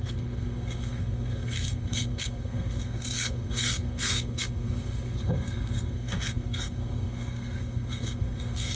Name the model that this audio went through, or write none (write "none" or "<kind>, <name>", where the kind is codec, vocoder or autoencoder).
codec, SNAC